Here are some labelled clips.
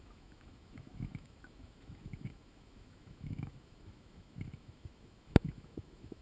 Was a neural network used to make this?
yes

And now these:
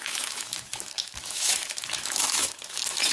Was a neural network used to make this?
yes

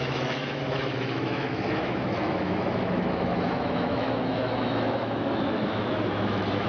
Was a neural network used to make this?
yes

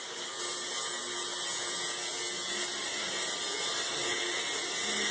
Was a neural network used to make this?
no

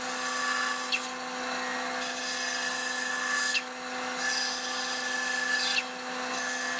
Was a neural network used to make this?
no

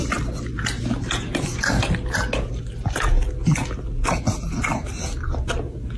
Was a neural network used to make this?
no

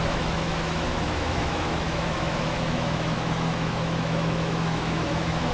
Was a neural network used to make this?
yes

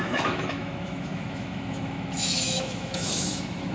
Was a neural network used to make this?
yes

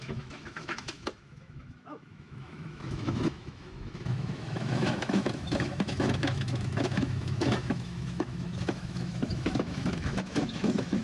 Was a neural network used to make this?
yes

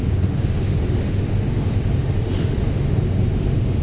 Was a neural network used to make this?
yes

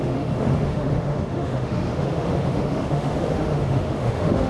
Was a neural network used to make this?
yes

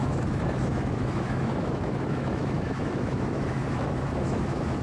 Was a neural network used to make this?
yes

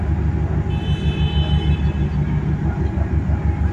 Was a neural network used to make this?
no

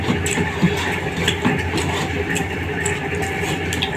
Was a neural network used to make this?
no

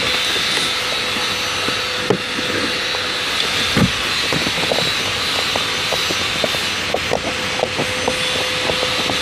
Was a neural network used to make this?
no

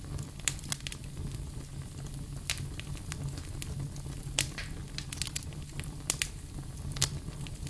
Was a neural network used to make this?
no